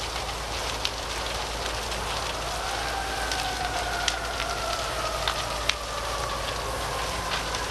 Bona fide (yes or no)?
yes